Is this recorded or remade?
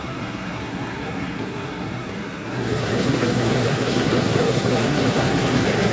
remade